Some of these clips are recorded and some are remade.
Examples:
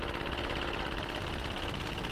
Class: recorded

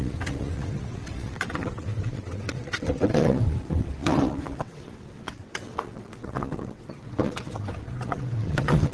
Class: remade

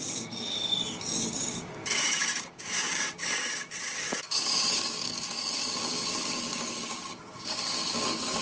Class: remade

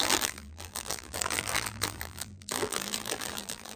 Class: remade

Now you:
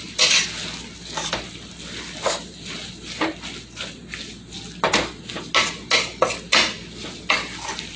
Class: recorded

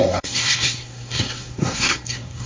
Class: remade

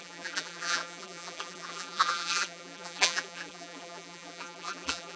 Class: remade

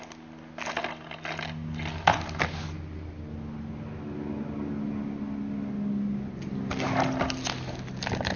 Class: recorded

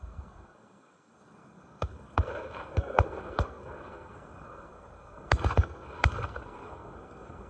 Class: remade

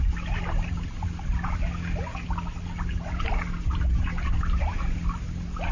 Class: recorded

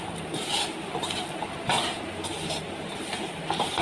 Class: remade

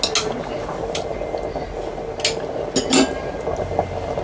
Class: recorded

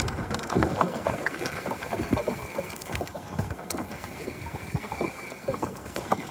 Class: remade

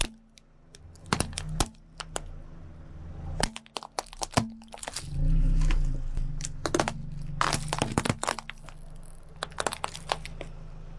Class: recorded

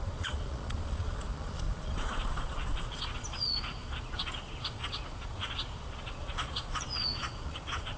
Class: remade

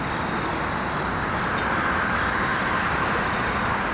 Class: recorded